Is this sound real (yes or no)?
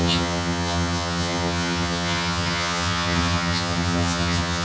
no